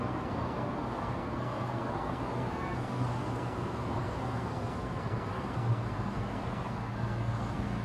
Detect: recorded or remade remade